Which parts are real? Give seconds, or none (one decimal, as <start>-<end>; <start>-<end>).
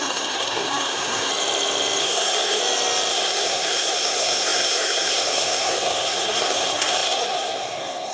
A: 1.3-2.0; 2.6-3.1